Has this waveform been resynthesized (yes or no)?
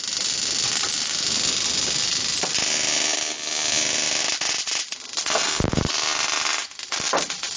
no